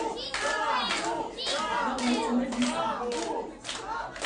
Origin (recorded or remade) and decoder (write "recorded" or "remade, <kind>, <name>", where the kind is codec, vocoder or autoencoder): recorded